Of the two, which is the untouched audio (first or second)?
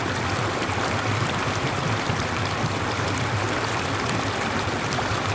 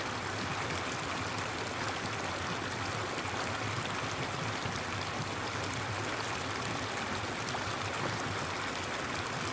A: second